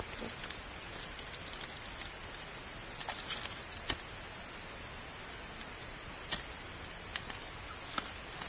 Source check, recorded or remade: recorded